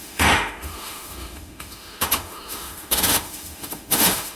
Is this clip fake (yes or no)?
yes